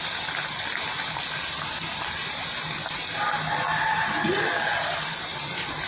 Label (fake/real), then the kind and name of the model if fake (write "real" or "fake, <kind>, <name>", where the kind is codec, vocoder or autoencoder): real